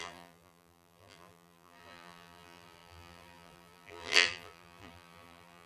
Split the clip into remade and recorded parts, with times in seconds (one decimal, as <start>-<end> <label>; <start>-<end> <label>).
0.0-5.7 remade